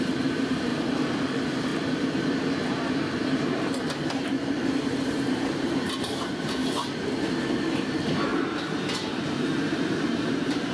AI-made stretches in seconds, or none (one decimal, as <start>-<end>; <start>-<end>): 0.0-6.6; 7.4-8.3; 9.1-10.7